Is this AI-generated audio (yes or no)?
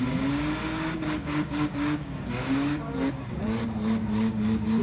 yes